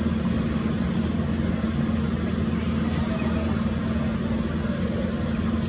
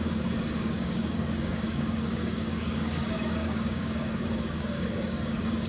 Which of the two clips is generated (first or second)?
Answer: second